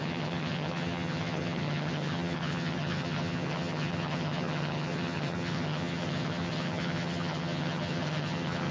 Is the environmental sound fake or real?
fake